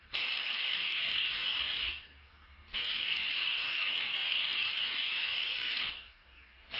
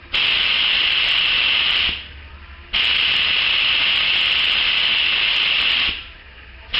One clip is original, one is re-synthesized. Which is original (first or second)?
second